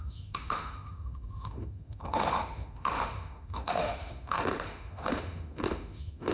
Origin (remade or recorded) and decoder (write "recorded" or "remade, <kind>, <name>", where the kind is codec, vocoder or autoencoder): remade, autoencoder, DAC-VAE